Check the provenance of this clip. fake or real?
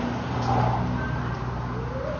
real